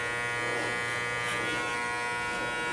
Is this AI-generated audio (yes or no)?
no